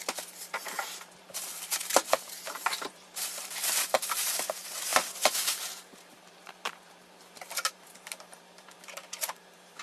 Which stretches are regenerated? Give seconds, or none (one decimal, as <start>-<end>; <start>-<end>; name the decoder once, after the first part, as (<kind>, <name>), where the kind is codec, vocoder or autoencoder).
0.0-9.8 (vocoder, BigVGAN v2)